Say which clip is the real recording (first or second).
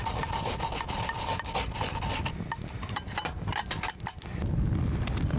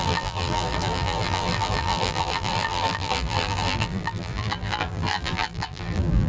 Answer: first